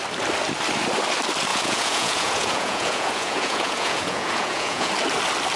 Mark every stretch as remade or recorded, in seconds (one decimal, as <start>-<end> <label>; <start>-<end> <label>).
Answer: 0.0-1.5 recorded; 1.5-4.9 remade; 4.9-5.6 recorded